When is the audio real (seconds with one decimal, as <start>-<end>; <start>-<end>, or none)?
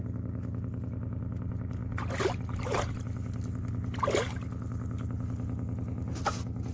0.0-6.7